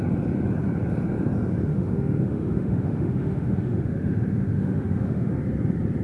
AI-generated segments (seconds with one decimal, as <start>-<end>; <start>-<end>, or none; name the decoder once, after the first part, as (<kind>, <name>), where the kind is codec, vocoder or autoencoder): 1.7-5.3 (autoencoder, DAC-VAE)